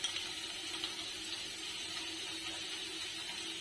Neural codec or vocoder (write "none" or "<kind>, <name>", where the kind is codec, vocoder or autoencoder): none